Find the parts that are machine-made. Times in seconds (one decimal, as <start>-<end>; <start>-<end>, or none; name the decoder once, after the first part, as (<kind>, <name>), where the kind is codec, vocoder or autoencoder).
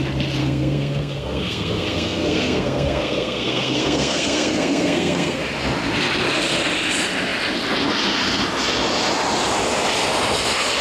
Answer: 0.4-5.4 (codec, SNAC)